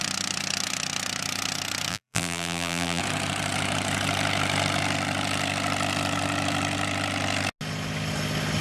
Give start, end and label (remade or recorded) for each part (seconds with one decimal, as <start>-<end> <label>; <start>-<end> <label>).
0.0-1.9 recorded; 1.9-3.0 remade; 3.0-8.6 recorded